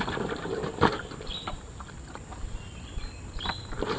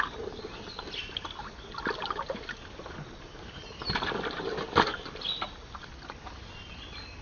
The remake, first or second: first